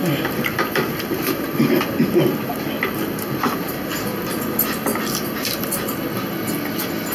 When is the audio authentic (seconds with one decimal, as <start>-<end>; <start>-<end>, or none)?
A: 4.3-7.1